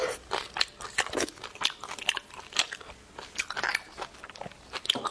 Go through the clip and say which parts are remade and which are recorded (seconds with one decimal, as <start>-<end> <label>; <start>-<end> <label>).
0.0-5.1 recorded